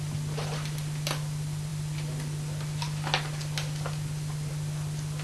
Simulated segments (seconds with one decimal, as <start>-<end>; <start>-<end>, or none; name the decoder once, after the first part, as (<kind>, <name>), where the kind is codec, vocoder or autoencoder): none